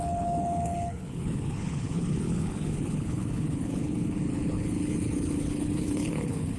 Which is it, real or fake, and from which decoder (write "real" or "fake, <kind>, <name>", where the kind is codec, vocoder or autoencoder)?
fake, codec, HILCodec